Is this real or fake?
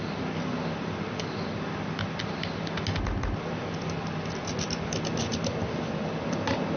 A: real